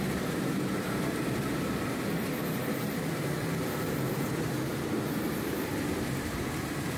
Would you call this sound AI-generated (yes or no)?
yes